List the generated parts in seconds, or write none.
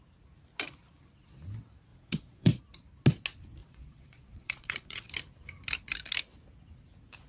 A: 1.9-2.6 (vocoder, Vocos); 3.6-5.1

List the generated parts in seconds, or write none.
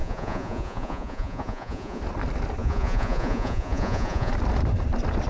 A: 0.0-2.0 (vocoder, Vocos); 2.6-4.3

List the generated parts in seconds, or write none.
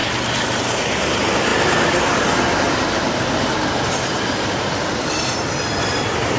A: none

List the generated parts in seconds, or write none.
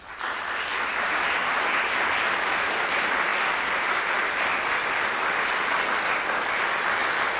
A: none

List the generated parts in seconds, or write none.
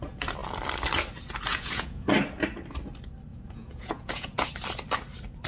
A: 1.5-2.1 (vocoder, Vocos); 3.3-4.5